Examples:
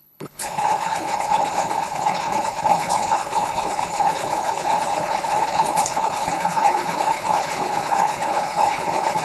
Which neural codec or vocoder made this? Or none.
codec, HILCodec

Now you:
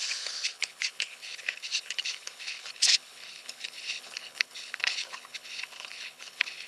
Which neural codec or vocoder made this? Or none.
codec, HILCodec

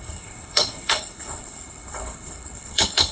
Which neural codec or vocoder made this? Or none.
codec, HILCodec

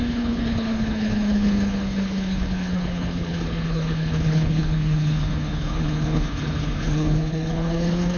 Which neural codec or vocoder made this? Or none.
codec, HILCodec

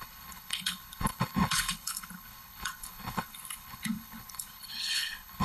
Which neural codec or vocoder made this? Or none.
codec, HILCodec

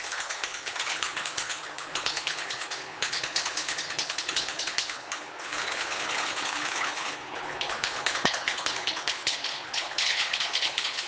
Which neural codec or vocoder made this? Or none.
codec, HILCodec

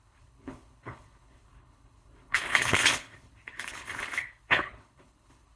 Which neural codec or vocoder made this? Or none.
codec, HILCodec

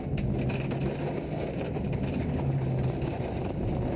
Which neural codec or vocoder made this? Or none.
none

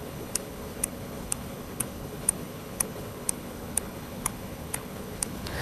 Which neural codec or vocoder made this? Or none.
codec, HILCodec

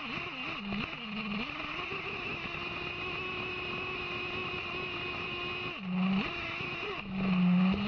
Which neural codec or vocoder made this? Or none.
none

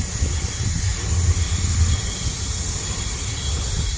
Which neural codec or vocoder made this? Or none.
none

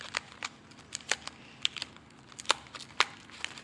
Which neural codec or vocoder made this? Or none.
none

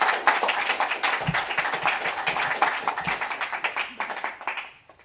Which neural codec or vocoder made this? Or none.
none